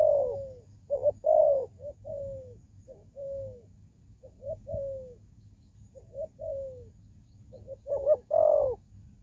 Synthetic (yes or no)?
yes